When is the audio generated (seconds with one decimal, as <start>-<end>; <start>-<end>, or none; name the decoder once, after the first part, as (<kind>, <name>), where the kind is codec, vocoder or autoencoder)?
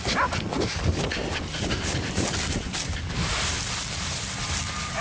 none